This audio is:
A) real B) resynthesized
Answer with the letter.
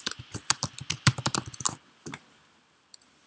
B